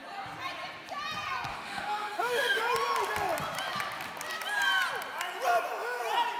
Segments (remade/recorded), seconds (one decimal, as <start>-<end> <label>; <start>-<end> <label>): 0.0-1.5 recorded; 1.5-2.6 remade; 2.6-6.4 recorded